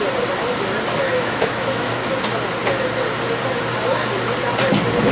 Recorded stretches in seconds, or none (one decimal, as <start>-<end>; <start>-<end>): 0.0-1.0; 1.9-5.1

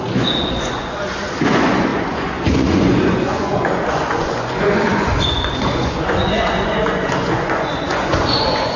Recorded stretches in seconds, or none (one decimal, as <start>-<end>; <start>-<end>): none

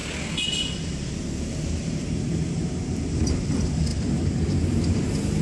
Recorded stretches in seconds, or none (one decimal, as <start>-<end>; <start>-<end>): 0.0-1.8; 2.9-5.4

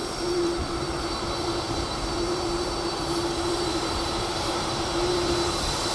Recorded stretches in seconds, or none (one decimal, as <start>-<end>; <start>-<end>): none

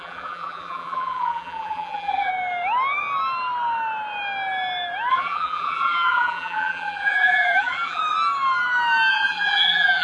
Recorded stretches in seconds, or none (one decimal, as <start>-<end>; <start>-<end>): 2.3-5.1; 8.0-9.1